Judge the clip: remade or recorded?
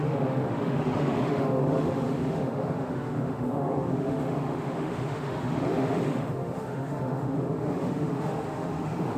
remade